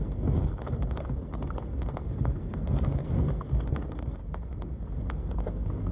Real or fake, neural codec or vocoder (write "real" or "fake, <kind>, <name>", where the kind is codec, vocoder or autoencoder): fake, codec, SNAC